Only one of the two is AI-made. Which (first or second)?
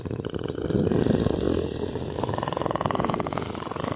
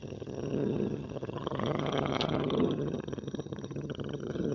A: second